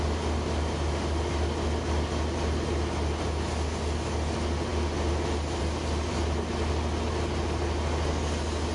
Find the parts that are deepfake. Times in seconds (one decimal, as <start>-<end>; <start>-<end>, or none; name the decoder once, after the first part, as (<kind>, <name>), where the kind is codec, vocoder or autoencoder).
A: none